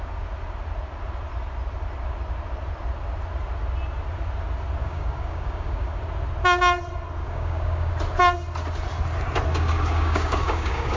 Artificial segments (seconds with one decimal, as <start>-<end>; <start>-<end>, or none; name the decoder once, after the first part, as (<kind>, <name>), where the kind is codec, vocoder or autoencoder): 4.8-6.0 (codec, DAC); 7.2-7.9; 9.5-11.0